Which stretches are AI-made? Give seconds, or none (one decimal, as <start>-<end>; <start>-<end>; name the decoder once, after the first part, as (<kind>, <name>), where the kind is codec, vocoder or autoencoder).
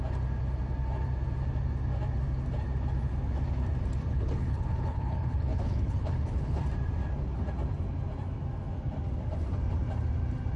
4.1-6.6 (codec, HILCodec)